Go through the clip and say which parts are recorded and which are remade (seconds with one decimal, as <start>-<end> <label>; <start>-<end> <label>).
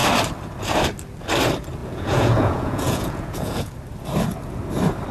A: 0.0-1.8 recorded; 1.8-3.7 remade; 3.7-5.1 recorded